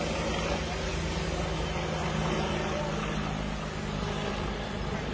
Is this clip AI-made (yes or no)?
no